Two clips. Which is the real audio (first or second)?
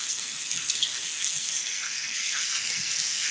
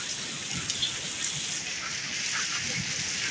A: second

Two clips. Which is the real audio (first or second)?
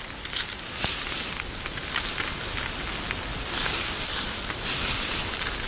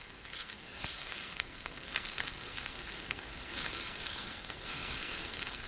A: first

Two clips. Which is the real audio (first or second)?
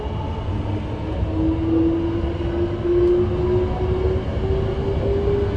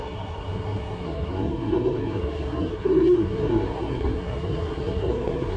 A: first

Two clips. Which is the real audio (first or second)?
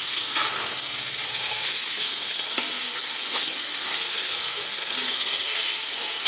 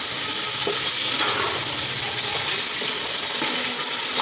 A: second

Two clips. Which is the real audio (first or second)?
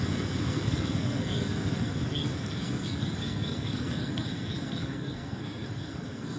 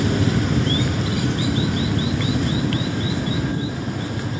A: second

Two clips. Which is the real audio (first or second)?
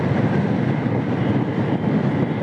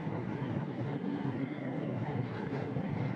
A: first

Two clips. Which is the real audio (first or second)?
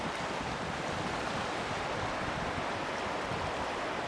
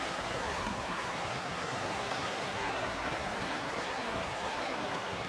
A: first